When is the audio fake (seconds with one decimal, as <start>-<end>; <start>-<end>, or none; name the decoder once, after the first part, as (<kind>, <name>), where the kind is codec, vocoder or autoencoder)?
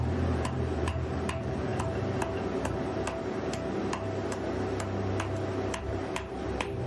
0.0-1.7 (vocoder, BigVGAN v2); 5.8-6.9